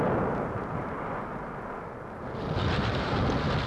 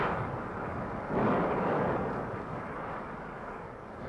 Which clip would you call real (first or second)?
first